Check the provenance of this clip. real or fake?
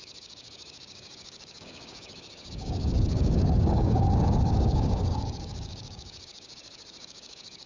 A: fake